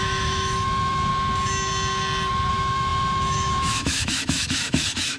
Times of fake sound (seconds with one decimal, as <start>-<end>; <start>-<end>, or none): 0.0-1.1; 2.5-5.2